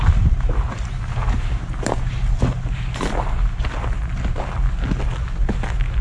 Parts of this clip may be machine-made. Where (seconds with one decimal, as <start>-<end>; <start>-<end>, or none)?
0.0-2.1

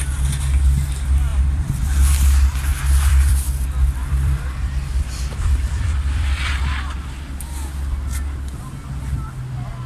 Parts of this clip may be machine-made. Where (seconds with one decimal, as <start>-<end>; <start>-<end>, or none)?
1.3-1.8; 2.7-6.6

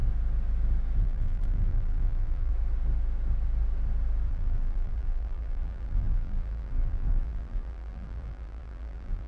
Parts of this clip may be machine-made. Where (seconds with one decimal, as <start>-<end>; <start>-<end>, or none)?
1.0-2.5; 4.3-9.3

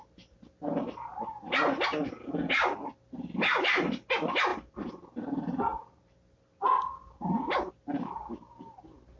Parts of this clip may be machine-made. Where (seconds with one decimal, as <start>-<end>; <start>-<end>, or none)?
none

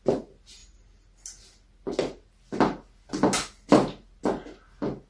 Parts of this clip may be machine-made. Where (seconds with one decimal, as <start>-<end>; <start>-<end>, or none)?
none